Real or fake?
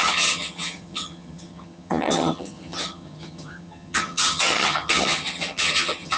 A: fake